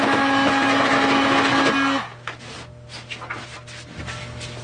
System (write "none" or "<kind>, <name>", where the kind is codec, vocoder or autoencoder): none